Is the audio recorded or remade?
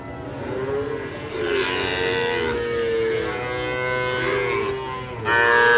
recorded